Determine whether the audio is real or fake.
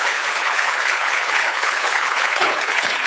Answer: fake